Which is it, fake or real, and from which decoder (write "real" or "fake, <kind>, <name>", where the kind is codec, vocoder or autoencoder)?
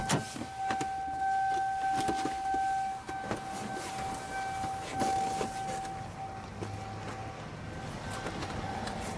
real